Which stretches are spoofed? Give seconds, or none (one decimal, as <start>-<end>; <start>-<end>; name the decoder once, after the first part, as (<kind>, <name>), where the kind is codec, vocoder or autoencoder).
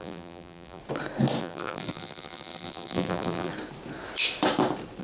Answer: 0.0-0.8 (vocoder, BigVGAN v2); 1.4-3.5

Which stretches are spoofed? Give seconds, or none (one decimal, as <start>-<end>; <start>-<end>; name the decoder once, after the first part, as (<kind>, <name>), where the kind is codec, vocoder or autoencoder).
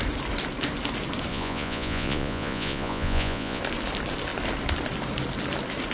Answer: 1.3-3.6 (vocoder, Vocos)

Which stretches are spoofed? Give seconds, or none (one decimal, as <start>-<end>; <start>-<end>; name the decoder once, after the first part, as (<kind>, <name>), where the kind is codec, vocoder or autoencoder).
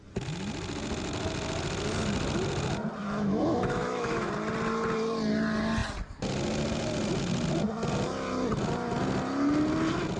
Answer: 3.0-4.3 (autoencoder, DAC-VAE)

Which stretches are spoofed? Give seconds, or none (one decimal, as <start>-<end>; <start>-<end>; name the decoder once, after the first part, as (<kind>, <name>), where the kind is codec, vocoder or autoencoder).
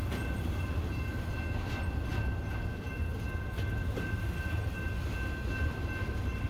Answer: none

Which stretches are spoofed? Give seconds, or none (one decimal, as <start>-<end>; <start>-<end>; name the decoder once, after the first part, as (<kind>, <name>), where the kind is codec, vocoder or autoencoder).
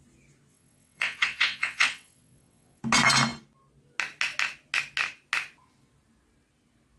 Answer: 0.5-2.8 (vocoder, WaveNeXt)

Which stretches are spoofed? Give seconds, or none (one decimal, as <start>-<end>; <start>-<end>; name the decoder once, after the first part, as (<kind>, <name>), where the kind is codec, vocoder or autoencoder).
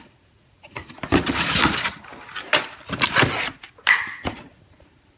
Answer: 0.0-0.8 (vocoder, Vocos); 3.9-5.2